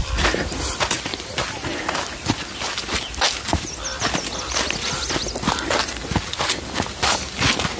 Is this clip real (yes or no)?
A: yes